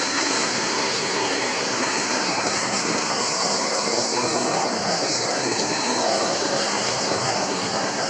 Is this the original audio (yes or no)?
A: no